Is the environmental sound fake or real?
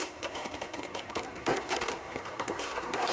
fake